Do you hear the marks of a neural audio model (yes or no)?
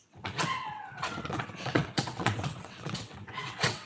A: yes